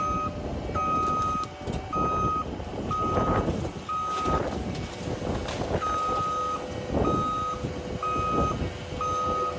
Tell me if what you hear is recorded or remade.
recorded